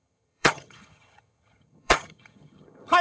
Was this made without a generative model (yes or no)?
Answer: no